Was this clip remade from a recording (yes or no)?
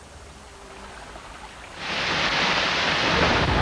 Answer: no